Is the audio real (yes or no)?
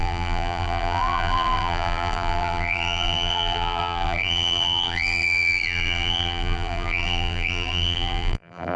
no